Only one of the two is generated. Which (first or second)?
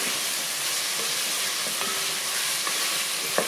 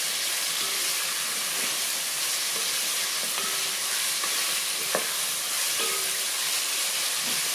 second